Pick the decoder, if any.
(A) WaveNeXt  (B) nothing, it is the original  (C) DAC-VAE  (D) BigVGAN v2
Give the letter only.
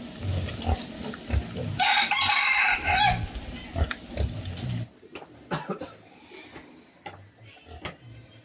B